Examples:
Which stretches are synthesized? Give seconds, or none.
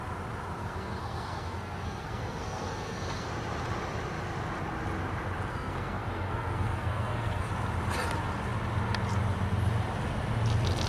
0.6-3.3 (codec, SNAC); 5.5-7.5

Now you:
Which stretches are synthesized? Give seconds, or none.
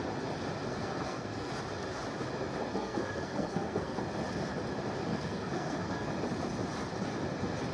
0.7-1.5 (codec, SNAC); 2.7-4.0; 5.1-6.1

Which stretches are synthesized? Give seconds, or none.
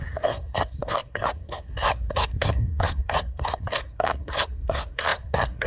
0.0-5.7 (codec, SNAC)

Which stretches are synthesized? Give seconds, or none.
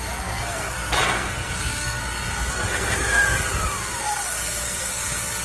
0.0-2.0 (codec, SNAC); 2.5-3.2; 4.0-5.4